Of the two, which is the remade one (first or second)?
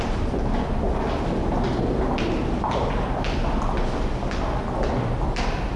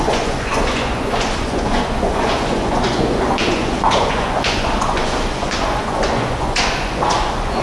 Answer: second